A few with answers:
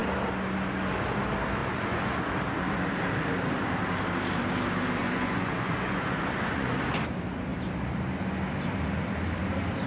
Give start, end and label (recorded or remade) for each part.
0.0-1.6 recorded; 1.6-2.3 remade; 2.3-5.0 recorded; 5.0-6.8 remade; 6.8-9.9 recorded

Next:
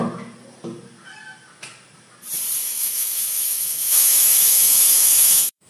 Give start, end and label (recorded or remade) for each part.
0.0-2.6 recorded; 2.6-5.7 remade

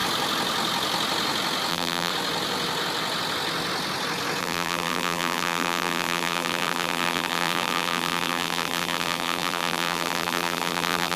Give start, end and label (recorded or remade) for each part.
0.0-1.7 recorded; 1.7-2.1 remade; 2.1-4.4 recorded; 4.4-11.2 remade

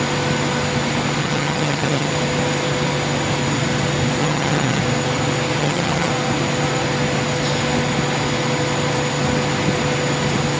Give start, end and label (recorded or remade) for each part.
0.0-1.2 recorded; 1.2-2.1 remade; 2.1-4.2 recorded; 4.2-4.8 remade; 4.8-5.6 recorded; 5.6-6.1 remade; 6.1-10.6 recorded

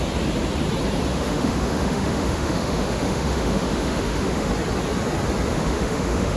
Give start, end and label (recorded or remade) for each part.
0.0-1.1 recorded; 1.1-4.5 remade; 4.5-5.5 recorded; 5.5-6.4 remade

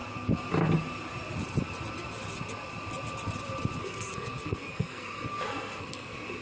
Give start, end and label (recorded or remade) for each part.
0.0-3.8 recorded; 3.8-6.4 remade